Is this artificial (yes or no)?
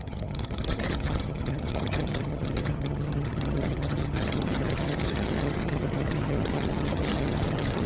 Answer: yes